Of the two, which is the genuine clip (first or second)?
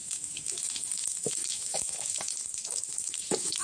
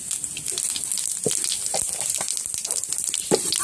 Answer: second